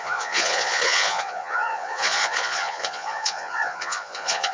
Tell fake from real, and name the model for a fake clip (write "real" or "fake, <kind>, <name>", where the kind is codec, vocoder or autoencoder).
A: fake, vocoder, Vocos